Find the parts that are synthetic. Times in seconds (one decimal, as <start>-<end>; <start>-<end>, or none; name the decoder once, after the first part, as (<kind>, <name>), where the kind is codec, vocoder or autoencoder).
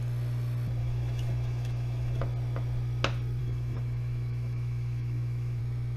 0.8-2.2 (autoencoder, DAC-VAE); 3.4-5.6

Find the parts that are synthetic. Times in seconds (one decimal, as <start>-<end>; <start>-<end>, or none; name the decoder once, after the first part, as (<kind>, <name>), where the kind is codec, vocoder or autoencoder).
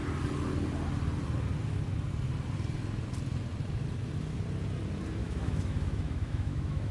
5.2-6.9 (autoencoder, DAC-VAE)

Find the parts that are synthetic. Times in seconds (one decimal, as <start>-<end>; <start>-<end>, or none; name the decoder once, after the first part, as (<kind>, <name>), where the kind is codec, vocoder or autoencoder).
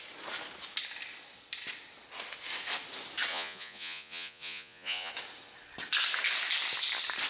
3.3-5.1 (vocoder, Vocos)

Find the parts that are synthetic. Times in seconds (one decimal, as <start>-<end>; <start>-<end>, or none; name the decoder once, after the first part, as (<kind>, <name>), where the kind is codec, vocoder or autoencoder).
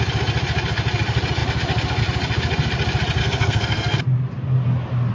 3.2-4.0 (codec, SNAC)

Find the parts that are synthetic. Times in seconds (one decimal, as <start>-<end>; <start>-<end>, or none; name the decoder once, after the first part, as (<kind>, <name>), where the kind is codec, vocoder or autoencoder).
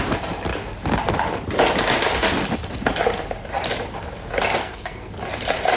4.6-5.1 (codec, SNAC)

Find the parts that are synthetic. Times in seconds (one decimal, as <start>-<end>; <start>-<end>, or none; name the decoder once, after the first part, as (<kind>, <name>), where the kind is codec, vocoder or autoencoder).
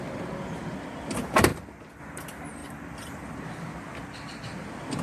1.5-2.0 (vocoder, BigVGAN v2); 2.6-3.4